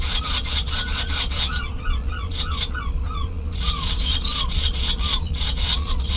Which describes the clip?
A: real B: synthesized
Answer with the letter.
B